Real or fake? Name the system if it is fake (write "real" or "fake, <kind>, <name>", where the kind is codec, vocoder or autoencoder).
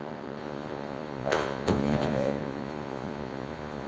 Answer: fake, vocoder, Vocos